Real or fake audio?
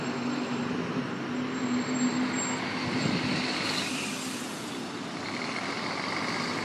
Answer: real